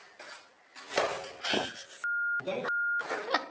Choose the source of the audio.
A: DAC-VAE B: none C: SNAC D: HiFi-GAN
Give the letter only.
B